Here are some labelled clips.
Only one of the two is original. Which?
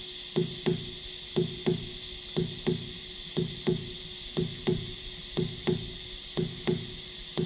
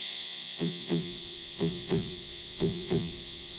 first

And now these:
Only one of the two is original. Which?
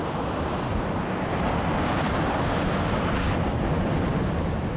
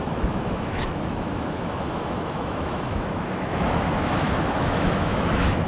first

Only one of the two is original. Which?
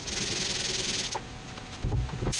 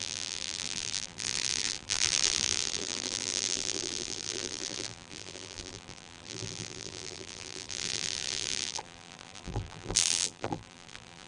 first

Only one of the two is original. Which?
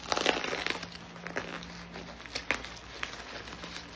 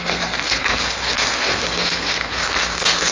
first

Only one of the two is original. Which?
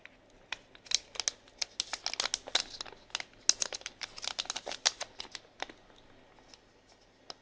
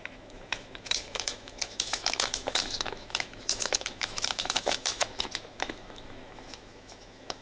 first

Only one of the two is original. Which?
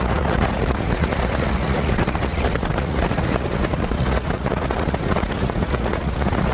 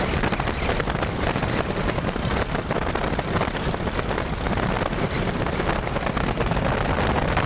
second